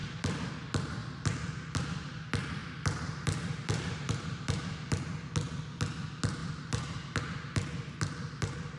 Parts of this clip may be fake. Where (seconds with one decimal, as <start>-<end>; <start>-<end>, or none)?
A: 0.0-0.5; 1.0-1.8; 2.6-5.3; 6.4-7.2